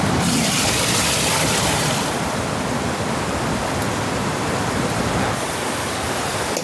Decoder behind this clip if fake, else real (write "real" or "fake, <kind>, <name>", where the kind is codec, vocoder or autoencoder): real